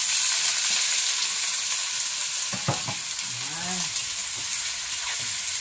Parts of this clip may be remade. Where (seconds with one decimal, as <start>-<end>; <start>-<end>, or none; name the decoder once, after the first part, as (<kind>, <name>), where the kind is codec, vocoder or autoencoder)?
none

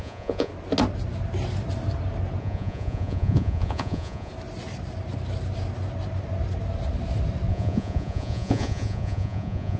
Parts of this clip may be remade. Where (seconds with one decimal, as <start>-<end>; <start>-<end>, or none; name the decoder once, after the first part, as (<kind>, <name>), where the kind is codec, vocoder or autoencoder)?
0.0-0.5 (vocoder, Vocos); 2.4-4.3; 7.5-9.8

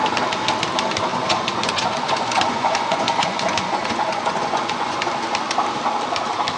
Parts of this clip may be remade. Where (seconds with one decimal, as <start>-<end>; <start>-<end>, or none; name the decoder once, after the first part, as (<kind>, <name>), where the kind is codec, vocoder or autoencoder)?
1.1-5.1 (vocoder, Vocos)

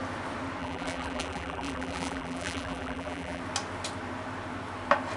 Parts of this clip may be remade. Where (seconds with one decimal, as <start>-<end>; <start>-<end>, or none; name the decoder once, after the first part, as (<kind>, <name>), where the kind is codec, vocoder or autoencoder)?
0.6-3.4 (vocoder, BigVGAN v2)

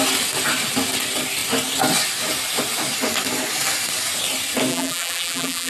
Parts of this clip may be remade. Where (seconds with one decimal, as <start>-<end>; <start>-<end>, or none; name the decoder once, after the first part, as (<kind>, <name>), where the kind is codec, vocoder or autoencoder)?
4.7-5.7 (vocoder, BigVGAN v2)